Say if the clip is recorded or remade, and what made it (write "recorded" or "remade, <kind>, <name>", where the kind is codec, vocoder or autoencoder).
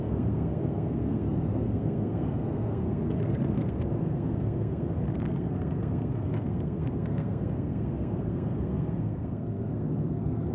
remade, codec, SNAC